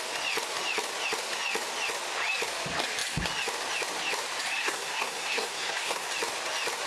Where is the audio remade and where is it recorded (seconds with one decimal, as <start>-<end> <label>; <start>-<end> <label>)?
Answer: 0.0-4.6 recorded; 4.6-6.1 remade; 6.1-6.9 recorded